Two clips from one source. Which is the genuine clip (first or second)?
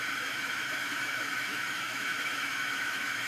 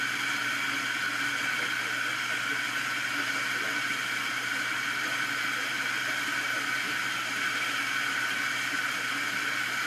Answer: second